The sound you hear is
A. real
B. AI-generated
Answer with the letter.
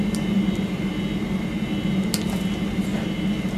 A